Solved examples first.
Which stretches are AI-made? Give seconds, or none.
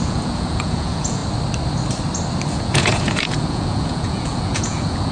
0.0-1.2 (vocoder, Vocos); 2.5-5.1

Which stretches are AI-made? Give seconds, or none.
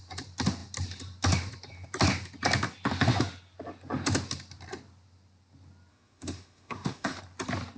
5.9-7.2 (autoencoder, DAC-VAE)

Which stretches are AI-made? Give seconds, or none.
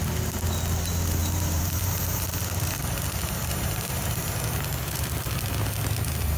1.2-2.3 (vocoder, BigVGAN v2); 3.4-4.2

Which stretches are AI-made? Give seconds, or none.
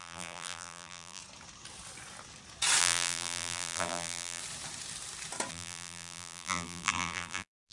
0.0-1.2 (vocoder, BigVGAN v2); 2.8-4.4; 5.5-7.7